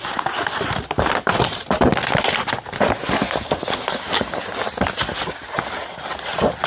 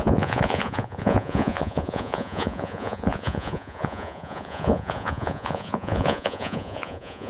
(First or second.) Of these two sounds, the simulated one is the second